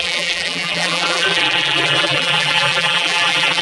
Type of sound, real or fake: fake